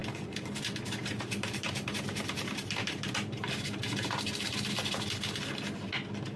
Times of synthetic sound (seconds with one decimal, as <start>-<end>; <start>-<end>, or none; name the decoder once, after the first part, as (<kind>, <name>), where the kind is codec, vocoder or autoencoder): 0.0-3.8 (vocoder, BigVGAN v2)